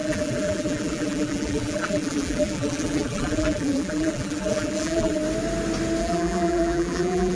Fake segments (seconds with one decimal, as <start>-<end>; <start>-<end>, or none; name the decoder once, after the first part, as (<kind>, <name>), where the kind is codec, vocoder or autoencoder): 0.0-5.2 (vocoder, BigVGAN v2); 6.0-7.4